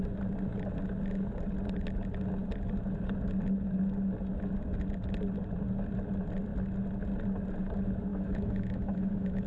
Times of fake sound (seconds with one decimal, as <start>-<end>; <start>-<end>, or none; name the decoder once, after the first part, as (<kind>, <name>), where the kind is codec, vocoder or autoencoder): 8.1-9.5 (autoencoder, DAC-VAE)